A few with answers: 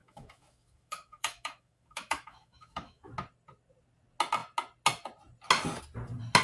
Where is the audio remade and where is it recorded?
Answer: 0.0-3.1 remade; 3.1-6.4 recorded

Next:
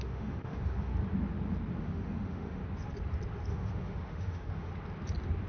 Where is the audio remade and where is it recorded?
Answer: 0.0-0.9 remade; 0.9-1.8 recorded; 1.8-2.6 remade; 2.6-3.5 recorded; 3.5-4.7 remade; 4.7-5.5 recorded

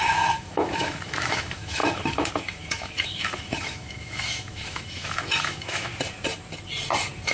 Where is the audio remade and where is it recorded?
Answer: 0.0-5.9 remade; 5.9-7.3 recorded

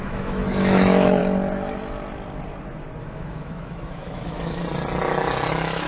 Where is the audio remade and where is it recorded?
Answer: 0.0-1.2 remade; 1.2-3.0 recorded; 3.0-4.6 remade; 4.6-5.5 recorded; 5.5-5.9 remade

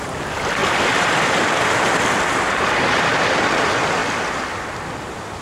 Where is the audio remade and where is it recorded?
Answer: 0.0-5.4 recorded

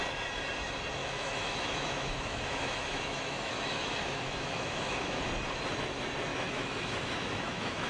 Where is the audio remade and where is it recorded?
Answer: 0.0-1.0 recorded; 1.0-5.2 remade; 5.2-6.3 recorded; 6.3-7.9 remade

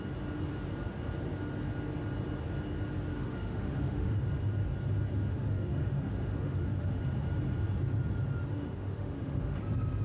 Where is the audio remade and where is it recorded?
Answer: 0.0-3.1 recorded; 3.1-4.2 remade; 4.2-5.3 recorded; 5.3-7.0 remade; 7.0-8.5 recorded; 8.5-9.6 remade; 9.6-10.0 recorded

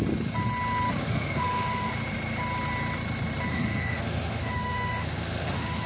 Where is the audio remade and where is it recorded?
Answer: 0.0-1.0 recorded; 1.0-1.9 remade; 1.9-3.5 recorded; 3.5-5.9 remade